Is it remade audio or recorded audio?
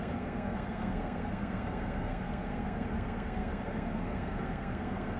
remade